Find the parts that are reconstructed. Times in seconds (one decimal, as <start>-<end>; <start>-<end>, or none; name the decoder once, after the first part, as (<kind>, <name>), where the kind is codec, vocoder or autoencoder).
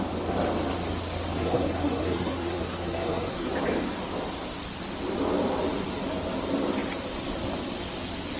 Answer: 1.4-3.5 (codec, SNAC)